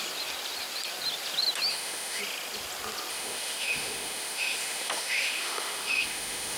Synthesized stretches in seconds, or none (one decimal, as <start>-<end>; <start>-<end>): 1.7-2.2; 3.1-6.6